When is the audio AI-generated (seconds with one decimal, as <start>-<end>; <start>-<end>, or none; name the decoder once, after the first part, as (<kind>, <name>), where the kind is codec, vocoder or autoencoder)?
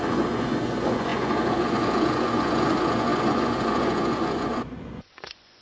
0.0-5.6 (vocoder, Vocos)